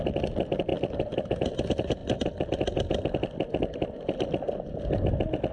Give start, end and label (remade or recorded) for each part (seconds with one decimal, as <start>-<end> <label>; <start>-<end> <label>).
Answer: 0.0-5.5 recorded